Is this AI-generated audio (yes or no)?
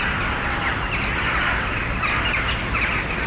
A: no